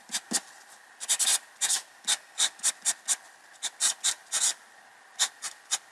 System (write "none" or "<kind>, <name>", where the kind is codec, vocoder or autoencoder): none